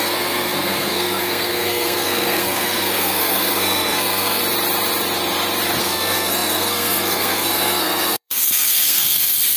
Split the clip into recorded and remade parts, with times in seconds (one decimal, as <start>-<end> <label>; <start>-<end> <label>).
0.0-4.4 remade; 4.4-5.8 recorded; 5.8-9.6 remade